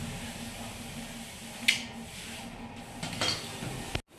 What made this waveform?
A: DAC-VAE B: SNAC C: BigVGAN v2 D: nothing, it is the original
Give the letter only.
D